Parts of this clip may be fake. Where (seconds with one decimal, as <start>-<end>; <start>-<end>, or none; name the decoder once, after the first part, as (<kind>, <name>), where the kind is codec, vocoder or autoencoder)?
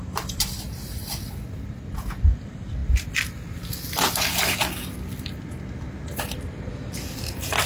0.0-2.8 (vocoder, BigVGAN v2)